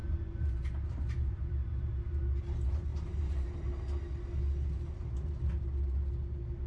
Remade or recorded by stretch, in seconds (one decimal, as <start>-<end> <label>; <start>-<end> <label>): 0.0-2.4 remade; 2.4-2.9 recorded; 2.9-3.8 remade; 3.8-6.7 recorded